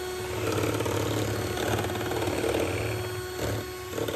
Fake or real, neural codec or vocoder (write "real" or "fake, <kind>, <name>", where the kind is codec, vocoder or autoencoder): real